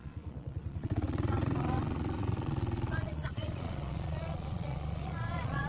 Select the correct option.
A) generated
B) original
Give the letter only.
A